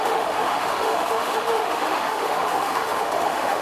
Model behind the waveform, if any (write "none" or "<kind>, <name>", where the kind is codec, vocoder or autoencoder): autoencoder, DAC-VAE